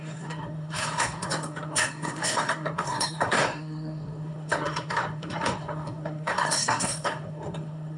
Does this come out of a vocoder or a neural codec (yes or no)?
yes